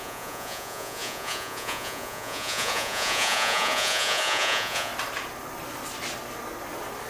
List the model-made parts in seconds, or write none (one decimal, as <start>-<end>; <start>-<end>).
0.0-4.9

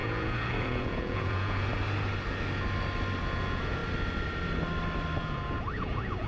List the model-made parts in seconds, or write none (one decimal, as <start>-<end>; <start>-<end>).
0.0-1.7; 3.2-3.8; 5.2-6.3

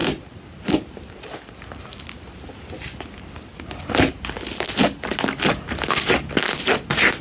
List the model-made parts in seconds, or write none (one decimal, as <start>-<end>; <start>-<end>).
none

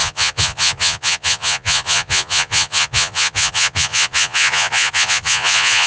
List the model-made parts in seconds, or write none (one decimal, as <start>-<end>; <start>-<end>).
0.0-5.9

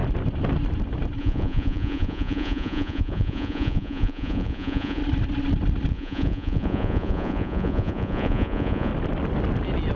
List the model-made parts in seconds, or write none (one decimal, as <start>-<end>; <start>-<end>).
1.2-5.0; 5.9-8.9

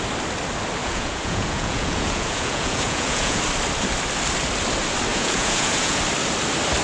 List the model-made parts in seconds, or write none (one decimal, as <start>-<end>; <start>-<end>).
0.8-3.4; 5.1-6.0

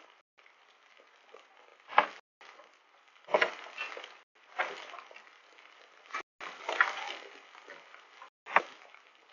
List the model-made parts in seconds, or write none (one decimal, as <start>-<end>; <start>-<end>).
none

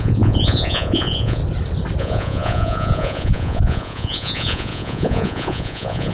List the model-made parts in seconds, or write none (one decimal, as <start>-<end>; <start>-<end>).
0.0-1.4; 2.0-6.1